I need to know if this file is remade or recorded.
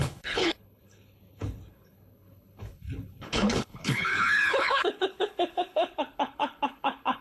remade